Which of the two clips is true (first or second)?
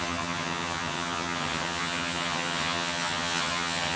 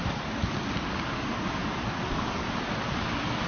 second